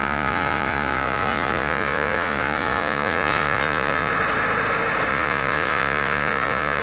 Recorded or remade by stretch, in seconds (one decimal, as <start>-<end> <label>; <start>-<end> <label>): 0.0-4.1 remade; 4.1-5.1 recorded; 5.1-6.8 remade